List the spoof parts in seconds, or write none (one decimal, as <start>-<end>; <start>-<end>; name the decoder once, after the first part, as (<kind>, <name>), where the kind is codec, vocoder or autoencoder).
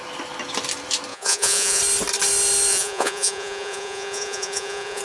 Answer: 1.1-1.8 (vocoder, Vocos); 2.7-5.0